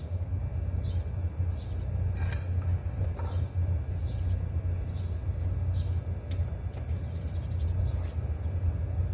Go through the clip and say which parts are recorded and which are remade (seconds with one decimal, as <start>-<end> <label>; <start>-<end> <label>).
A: 0.0-9.1 recorded